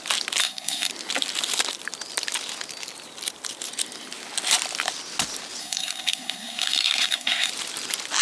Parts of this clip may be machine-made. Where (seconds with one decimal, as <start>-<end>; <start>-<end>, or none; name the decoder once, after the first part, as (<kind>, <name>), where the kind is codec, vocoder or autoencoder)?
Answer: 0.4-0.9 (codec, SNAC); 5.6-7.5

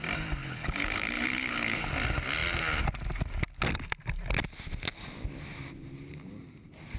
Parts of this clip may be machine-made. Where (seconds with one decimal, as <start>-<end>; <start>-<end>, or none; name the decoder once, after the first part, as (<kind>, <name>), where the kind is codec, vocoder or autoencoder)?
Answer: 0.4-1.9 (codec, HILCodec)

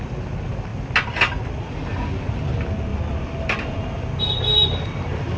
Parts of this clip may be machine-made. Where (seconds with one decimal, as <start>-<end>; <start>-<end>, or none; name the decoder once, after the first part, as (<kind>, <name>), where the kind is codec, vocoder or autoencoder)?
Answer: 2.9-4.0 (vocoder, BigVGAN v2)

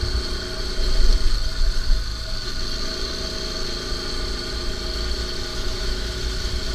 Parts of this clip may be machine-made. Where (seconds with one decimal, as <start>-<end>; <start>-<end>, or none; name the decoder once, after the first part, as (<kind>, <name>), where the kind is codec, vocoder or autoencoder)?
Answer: 5.5-6.2 (autoencoder, DAC-VAE)